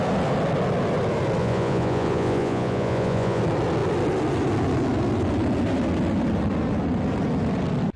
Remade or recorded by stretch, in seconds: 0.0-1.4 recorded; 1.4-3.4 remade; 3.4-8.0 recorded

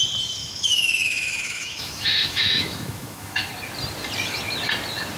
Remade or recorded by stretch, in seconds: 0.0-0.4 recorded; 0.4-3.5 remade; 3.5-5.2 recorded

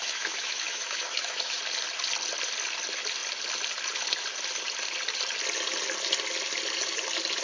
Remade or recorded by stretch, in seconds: 0.0-1.6 remade; 1.6-7.4 recorded